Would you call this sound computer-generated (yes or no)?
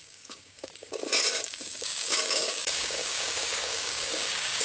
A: yes